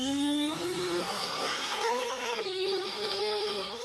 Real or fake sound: fake